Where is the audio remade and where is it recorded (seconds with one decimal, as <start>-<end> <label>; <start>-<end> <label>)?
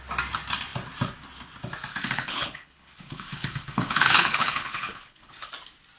0.0-1.9 recorded; 1.9-5.5 remade; 5.5-6.0 recorded